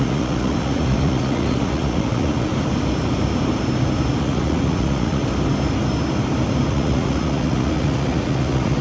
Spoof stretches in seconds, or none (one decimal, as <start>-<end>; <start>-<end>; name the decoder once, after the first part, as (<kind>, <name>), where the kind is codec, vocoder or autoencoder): 0.0-2.5 (vocoder, Vocos); 4.2-5.2; 6.7-8.8